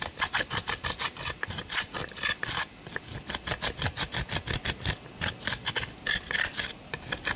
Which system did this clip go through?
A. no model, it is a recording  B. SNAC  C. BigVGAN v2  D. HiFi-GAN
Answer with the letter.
C